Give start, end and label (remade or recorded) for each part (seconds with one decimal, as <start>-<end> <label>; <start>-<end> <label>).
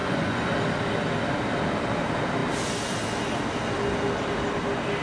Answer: 0.0-0.5 remade; 0.5-5.0 recorded